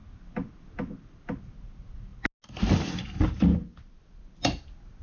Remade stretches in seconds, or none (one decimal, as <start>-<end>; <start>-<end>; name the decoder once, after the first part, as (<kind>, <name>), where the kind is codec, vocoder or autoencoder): none